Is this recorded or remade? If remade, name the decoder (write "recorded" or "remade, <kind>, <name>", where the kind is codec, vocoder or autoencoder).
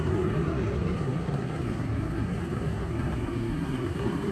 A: remade, codec, SNAC